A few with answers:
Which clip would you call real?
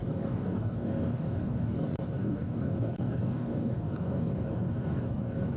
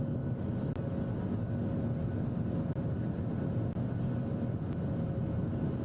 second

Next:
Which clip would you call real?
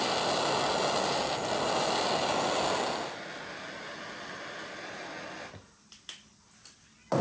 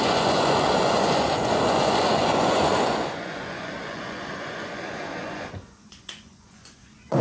first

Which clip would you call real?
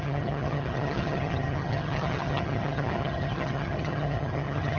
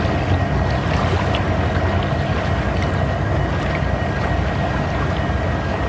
second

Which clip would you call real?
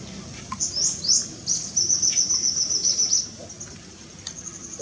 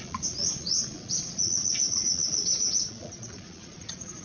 first